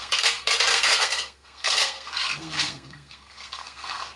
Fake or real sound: fake